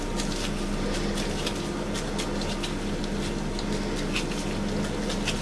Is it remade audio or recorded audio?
recorded